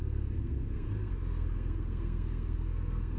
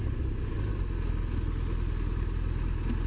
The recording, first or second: second